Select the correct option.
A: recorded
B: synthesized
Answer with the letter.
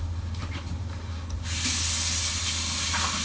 A